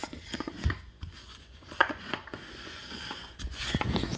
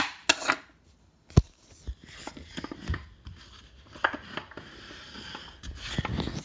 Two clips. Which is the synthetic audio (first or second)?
first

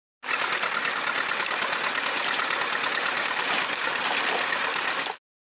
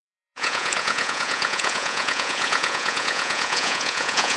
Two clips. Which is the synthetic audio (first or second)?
second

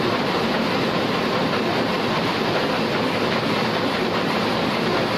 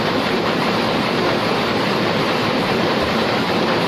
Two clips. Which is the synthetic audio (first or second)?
second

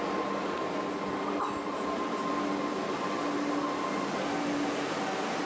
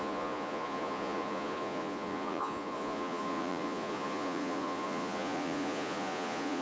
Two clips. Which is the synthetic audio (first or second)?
second